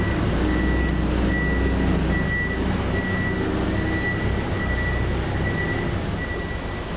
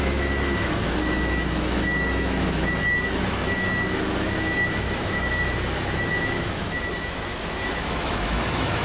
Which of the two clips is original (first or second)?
first